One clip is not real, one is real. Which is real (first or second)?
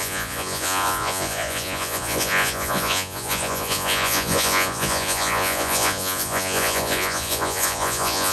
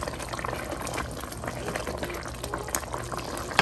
second